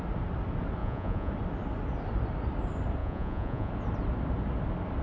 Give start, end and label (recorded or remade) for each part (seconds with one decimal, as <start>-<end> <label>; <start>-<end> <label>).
0.0-0.8 recorded; 0.8-1.3 remade; 1.3-3.0 recorded; 3.0-3.7 remade; 3.7-5.0 recorded